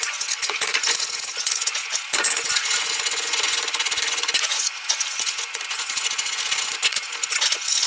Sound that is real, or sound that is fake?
fake